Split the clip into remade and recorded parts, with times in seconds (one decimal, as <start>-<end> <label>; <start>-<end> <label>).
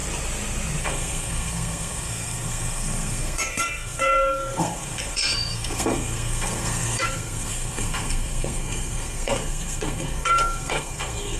0.0-0.8 recorded; 0.8-11.4 remade